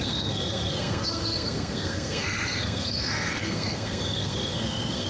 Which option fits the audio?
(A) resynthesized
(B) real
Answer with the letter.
A